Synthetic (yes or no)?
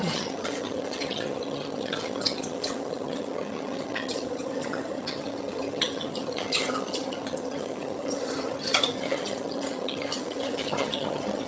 yes